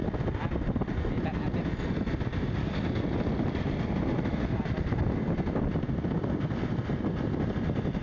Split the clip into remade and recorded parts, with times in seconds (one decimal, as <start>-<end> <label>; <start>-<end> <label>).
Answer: 0.0-8.0 recorded